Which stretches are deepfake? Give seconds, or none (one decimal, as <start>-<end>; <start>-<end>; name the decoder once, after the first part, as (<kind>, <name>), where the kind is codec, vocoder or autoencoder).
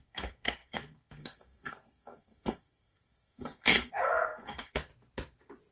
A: 0.0-4.9 (codec, SNAC)